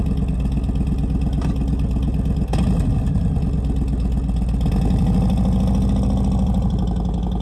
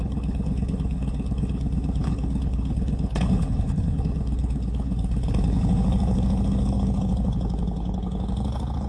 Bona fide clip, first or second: first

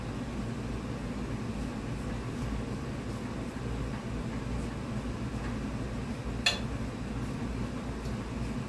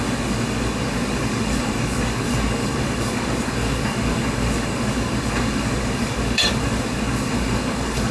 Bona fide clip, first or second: first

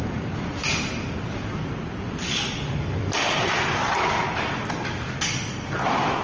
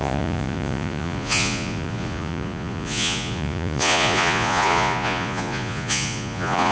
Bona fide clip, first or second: first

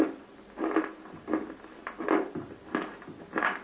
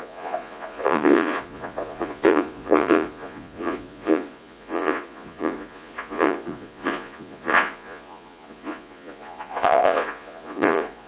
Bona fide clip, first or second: first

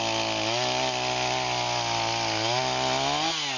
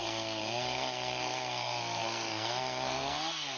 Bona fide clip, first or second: first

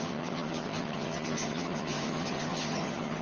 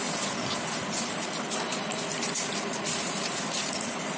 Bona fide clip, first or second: second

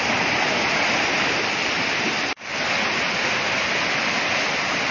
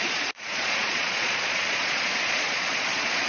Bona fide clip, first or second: first